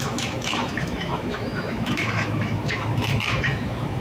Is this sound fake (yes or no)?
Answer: yes